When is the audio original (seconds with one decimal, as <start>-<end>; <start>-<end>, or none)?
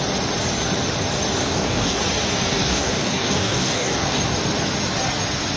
0.0-1.4; 2.0-2.5; 4.2-5.6